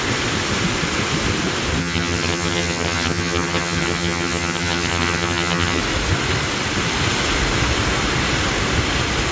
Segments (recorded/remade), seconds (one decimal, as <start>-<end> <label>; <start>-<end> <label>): 0.0-1.8 recorded; 1.8-5.8 remade; 5.8-9.3 recorded